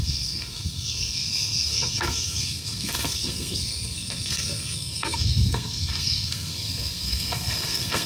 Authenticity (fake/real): fake